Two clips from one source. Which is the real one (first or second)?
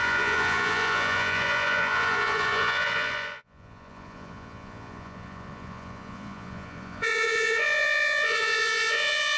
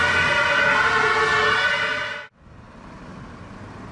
second